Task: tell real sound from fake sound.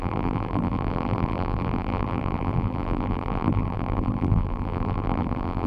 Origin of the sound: fake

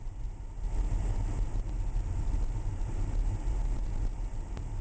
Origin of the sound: real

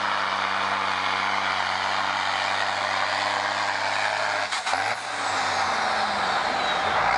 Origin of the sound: real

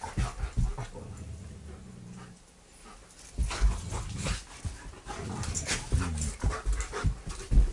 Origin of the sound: real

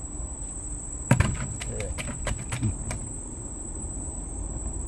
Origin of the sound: real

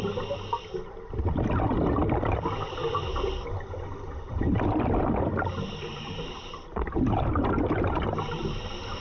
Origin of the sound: real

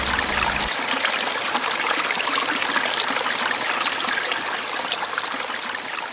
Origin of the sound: real